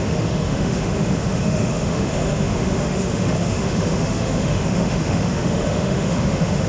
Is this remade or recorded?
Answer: remade